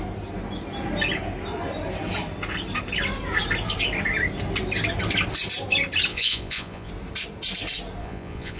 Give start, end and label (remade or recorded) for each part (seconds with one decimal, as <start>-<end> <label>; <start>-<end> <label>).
0.0-6.1 recorded; 6.1-6.9 remade; 6.9-8.0 recorded; 8.0-8.6 remade